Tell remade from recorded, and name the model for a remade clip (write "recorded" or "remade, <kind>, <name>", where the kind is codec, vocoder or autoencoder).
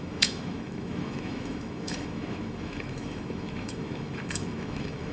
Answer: remade, autoencoder, DAC-VAE